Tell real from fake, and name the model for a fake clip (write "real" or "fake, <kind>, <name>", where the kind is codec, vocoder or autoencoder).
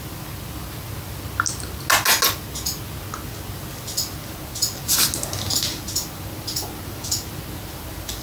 real